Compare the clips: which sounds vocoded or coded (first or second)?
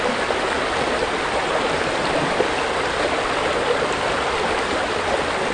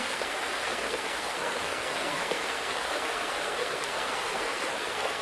second